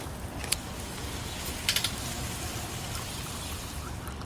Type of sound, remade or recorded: remade